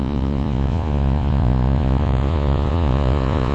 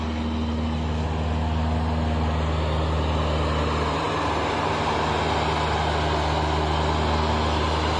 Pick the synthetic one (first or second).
first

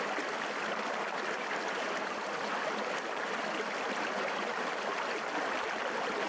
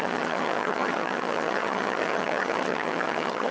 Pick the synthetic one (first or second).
second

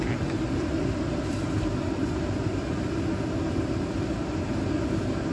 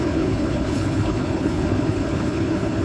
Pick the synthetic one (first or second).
second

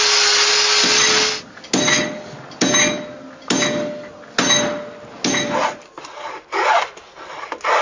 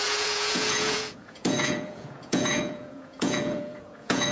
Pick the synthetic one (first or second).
second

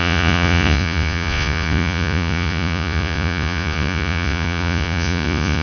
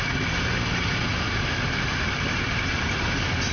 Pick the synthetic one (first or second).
first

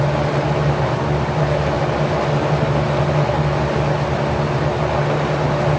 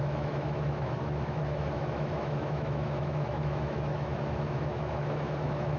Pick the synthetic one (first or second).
second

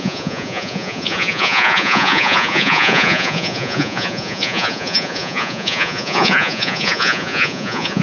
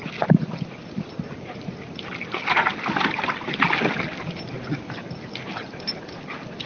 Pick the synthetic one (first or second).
first